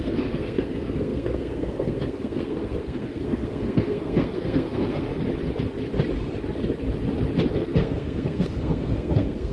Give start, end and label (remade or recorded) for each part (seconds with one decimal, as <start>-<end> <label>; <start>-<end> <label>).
0.0-5.1 remade; 5.1-7.5 recorded; 7.5-9.5 remade